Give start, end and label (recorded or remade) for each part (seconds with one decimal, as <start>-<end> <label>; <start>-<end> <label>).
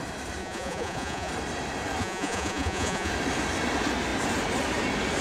0.0-0.4 recorded; 0.4-1.3 remade; 1.3-2.0 recorded; 2.0-3.1 remade; 3.1-5.2 recorded